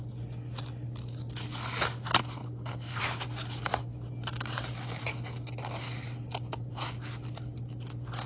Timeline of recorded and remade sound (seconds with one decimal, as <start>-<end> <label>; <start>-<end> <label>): 0.0-2.4 recorded; 2.4-3.0 remade; 3.0-8.3 recorded